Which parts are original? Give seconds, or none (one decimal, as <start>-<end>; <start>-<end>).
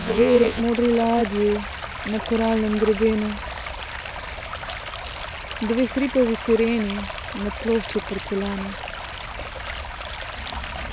0.6-10.9